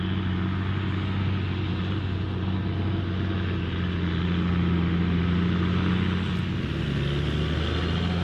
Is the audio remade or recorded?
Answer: recorded